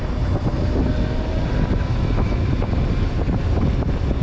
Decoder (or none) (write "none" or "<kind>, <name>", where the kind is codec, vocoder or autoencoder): none